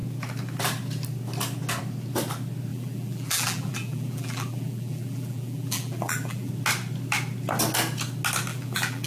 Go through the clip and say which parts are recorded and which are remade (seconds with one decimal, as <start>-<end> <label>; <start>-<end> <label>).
0.0-2.7 recorded; 2.7-6.5 remade; 6.5-8.5 recorded; 8.5-9.1 remade